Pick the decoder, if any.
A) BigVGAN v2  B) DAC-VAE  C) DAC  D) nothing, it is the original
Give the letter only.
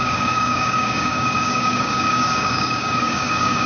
C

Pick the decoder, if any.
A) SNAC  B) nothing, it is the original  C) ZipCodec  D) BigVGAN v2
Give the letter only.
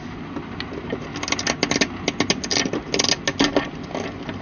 B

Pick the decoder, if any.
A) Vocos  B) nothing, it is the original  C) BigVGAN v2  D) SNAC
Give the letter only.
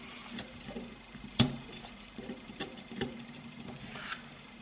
C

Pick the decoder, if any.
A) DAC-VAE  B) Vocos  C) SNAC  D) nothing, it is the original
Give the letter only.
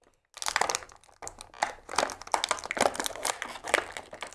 D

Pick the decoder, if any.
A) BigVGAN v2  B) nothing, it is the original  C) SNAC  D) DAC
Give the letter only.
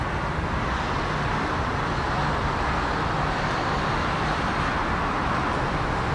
B